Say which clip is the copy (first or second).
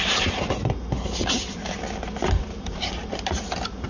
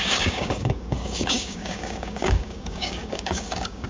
second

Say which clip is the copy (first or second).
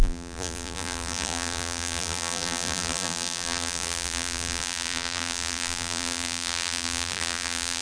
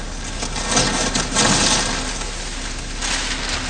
first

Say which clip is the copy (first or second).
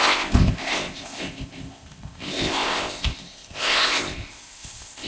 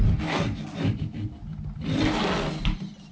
first